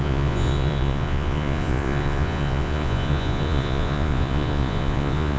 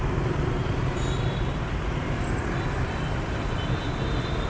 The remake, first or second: first